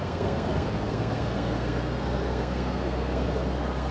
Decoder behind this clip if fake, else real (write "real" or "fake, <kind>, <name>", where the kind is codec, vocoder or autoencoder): fake, codec, SNAC